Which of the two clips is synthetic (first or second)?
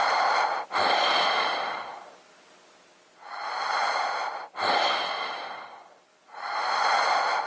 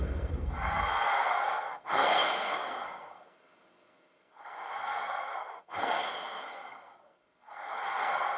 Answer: second